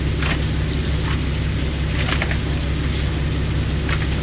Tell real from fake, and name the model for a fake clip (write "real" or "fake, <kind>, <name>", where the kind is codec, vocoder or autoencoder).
real